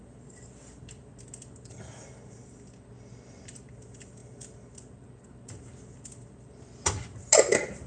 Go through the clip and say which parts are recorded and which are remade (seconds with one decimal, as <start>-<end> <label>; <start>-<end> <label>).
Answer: 0.0-7.9 recorded